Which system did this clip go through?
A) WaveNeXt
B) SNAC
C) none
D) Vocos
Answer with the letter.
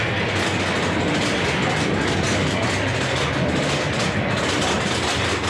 C